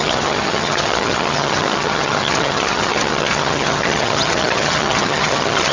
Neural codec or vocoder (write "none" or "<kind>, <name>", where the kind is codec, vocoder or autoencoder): vocoder, HiFi-GAN